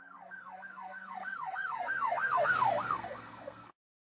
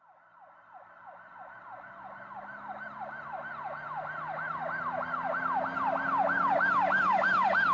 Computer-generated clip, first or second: first